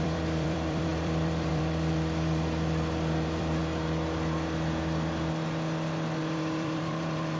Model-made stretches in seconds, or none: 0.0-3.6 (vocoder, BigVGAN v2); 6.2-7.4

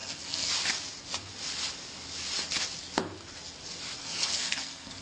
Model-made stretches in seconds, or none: 0.0-0.5 (codec, SNAC); 4.0-5.0

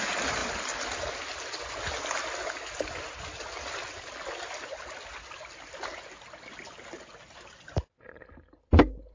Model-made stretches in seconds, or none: none

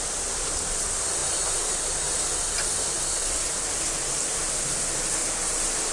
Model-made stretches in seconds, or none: none

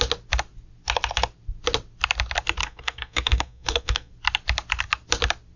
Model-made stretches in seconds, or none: 2.6-4.1 (codec, SNAC)

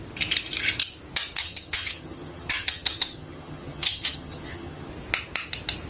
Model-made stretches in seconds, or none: 1.4-4.9 (vocoder, HiFi-GAN)

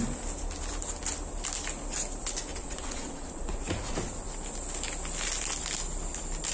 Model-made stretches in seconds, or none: 2.5-4.2 (vocoder, Vocos)

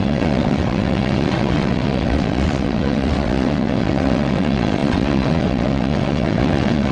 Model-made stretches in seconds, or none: 0.0-6.9 (vocoder, WaveNeXt)